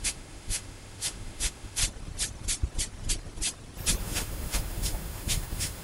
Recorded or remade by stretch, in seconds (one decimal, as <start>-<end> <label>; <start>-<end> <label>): 0.0-1.8 remade; 1.8-4.0 recorded; 4.0-5.8 remade